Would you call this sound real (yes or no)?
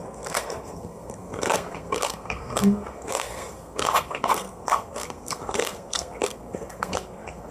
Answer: no